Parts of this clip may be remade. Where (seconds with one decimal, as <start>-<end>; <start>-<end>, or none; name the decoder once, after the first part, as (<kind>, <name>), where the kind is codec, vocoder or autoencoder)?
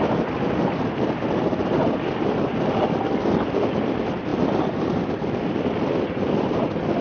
none